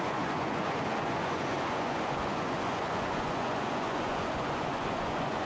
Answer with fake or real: fake